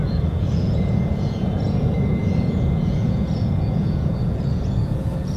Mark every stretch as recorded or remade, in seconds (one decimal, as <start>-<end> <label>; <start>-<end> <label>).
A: 0.0-5.4 remade